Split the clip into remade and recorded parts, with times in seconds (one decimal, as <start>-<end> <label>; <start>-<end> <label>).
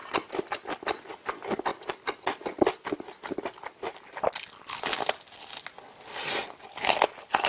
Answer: 0.0-7.5 recorded